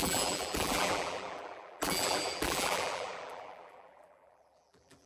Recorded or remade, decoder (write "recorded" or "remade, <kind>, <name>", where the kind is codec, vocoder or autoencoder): remade, vocoder, BigVGAN v2